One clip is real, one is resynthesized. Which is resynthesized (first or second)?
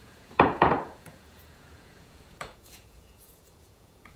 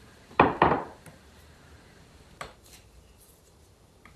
first